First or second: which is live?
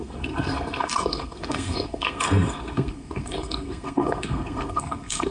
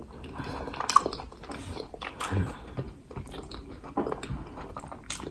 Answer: second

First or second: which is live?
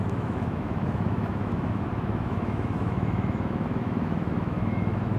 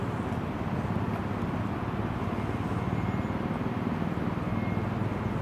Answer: second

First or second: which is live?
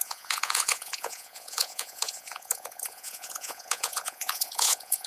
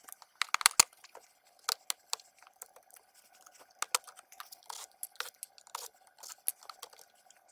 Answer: second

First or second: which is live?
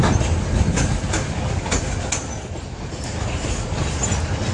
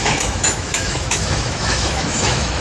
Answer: first